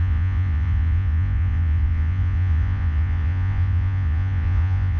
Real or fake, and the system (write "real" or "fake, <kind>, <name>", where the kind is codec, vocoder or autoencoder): fake, vocoder, Vocos